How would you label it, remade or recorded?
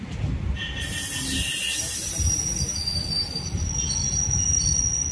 recorded